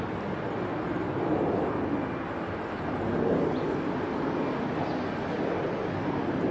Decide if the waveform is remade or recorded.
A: recorded